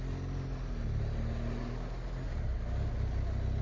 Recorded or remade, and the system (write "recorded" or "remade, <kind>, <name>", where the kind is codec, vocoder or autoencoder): recorded